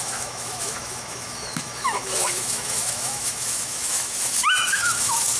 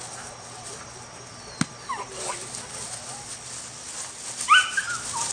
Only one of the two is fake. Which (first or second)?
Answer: first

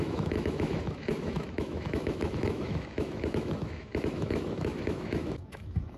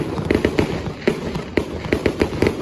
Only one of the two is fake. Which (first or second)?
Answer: first